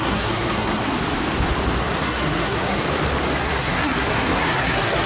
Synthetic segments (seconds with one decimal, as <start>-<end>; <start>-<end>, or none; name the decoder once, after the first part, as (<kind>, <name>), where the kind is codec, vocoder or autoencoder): 0.0-0.9 (codec, SNAC); 1.8-2.8; 3.4-5.1